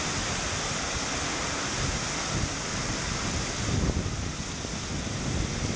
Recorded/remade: recorded